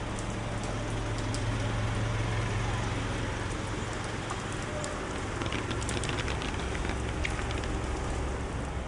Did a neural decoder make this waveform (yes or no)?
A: no